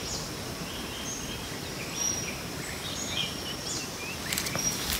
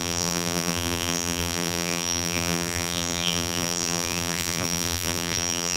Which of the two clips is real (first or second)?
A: first